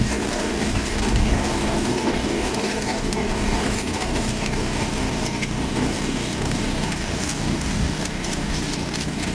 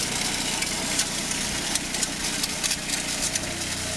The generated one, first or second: first